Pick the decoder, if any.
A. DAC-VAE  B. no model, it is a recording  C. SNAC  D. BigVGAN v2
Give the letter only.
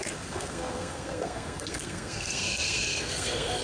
C